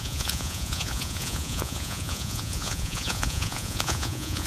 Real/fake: fake